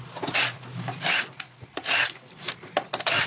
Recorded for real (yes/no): yes